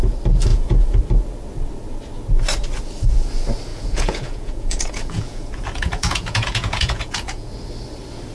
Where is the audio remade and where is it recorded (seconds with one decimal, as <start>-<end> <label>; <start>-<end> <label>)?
0.0-0.5 recorded; 0.5-1.0 remade; 1.0-3.7 recorded; 3.7-7.5 remade; 7.5-8.3 recorded